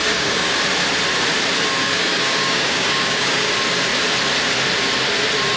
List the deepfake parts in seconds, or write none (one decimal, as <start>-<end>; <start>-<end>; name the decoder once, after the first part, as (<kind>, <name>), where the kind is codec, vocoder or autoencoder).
0.0-0.6 (codec, DAC); 1.8-3.5